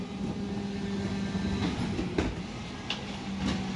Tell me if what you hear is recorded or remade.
recorded